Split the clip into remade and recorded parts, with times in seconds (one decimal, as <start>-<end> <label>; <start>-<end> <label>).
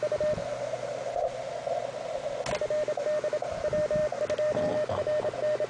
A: 0.0-5.7 recorded